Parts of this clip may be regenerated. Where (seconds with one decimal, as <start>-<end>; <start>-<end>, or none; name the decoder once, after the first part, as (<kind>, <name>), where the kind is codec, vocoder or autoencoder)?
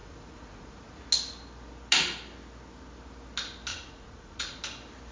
0.0-1.0 (vocoder, Vocos); 3.7-4.6